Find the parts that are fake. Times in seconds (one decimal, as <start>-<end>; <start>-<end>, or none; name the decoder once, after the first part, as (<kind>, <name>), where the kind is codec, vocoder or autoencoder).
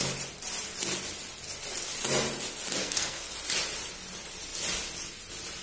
2.8-3.3 (codec, SNAC)